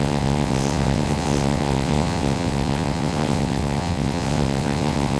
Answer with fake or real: fake